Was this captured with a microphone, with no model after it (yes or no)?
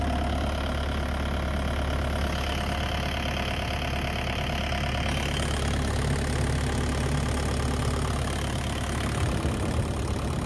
yes